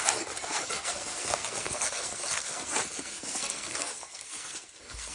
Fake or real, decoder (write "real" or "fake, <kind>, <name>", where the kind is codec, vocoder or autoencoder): fake, codec, SNAC